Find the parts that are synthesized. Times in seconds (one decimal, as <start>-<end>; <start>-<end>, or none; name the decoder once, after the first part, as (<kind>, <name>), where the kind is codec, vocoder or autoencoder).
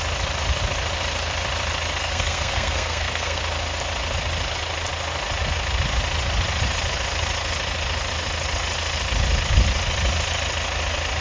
2.0-3.4 (codec, SNAC)